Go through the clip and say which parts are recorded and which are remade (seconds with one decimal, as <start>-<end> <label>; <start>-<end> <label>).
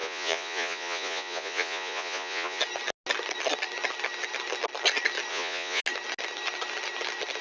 0.0-2.6 remade; 2.6-5.3 recorded; 5.3-5.8 remade; 5.8-7.4 recorded